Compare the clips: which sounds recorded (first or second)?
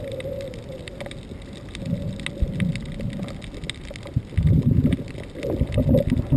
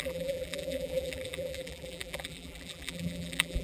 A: first